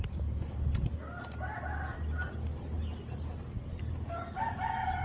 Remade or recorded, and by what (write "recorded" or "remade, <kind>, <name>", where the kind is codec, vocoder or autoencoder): recorded